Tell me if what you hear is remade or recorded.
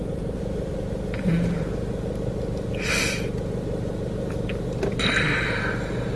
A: recorded